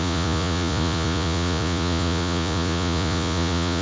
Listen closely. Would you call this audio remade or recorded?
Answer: remade